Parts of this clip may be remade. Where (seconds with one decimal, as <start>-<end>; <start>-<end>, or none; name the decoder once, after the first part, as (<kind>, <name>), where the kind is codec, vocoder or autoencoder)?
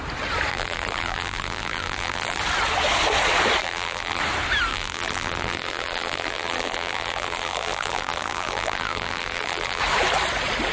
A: 0.5-2.4 (vocoder, BigVGAN v2); 3.6-4.2; 4.7-9.8